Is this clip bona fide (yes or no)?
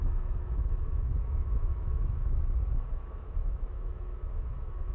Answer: no